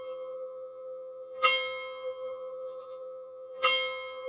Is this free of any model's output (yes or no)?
no